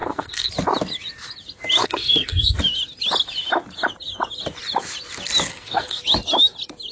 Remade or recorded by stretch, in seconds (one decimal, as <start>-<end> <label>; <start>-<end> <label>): 0.0-0.5 remade; 0.5-1.8 recorded; 1.8-2.6 remade; 2.6-5.5 recorded; 5.5-6.0 remade; 6.0-6.9 recorded